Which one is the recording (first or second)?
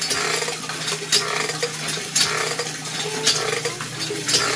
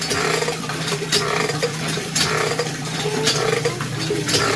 first